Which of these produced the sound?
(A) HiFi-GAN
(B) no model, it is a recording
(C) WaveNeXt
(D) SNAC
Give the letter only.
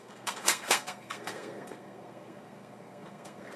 D